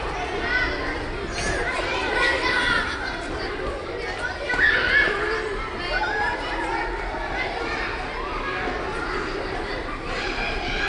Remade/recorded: recorded